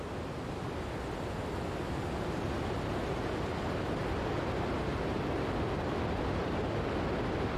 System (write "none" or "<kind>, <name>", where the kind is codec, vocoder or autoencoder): none